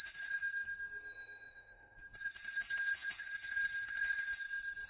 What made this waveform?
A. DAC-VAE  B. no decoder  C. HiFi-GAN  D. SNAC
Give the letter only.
A